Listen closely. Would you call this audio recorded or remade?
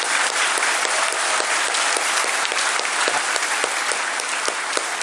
remade